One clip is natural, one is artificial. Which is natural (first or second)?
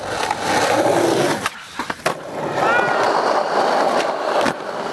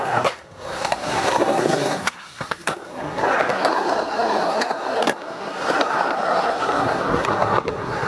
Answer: first